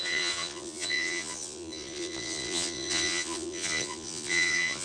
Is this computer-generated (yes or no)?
yes